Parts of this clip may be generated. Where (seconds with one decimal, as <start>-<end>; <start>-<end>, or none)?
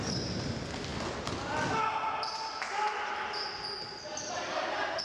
none